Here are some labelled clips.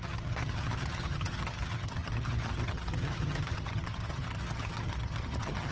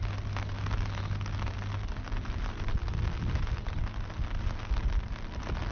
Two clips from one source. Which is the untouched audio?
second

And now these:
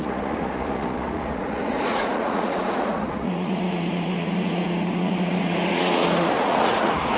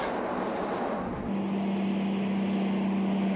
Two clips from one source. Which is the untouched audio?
second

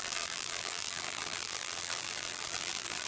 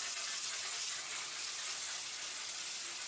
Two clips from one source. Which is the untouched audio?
second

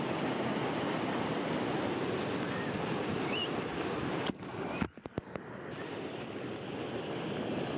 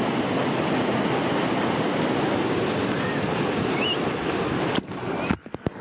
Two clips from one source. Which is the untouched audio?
second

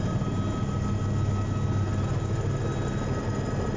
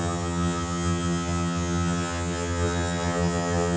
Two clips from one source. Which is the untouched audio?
first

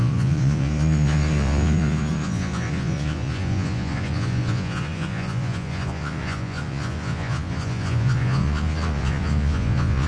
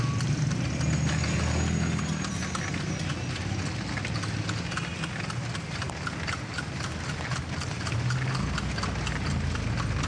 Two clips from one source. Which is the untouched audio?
second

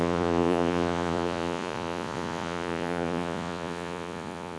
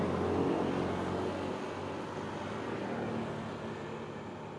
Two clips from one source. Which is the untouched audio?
second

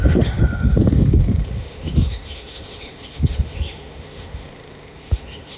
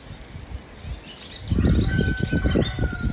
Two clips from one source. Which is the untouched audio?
second